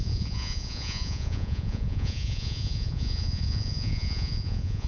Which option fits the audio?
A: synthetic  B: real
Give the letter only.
A